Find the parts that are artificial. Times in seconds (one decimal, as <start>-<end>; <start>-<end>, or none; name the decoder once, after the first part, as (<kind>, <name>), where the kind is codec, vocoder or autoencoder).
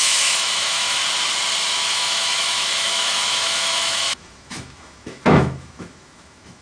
0.0-1.0 (autoencoder, DAC-VAE); 1.9-6.6